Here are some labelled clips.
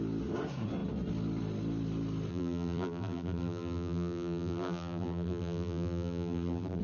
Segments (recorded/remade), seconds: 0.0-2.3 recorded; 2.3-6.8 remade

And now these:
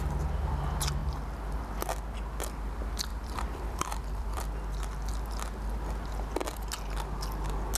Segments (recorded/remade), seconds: 0.0-3.1 recorded; 3.1-4.4 remade; 4.4-7.8 recorded

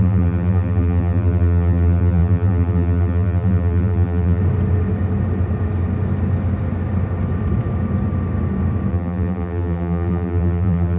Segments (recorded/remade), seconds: 0.0-4.4 remade; 4.4-8.9 recorded; 8.9-11.0 remade